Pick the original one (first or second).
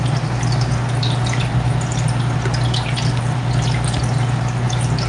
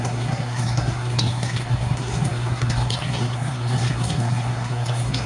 first